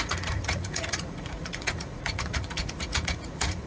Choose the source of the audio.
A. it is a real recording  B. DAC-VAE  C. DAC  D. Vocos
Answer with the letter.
D